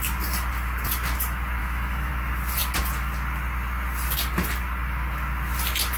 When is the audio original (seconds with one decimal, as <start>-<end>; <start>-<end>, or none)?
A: 0.0-1.6; 2.1-6.0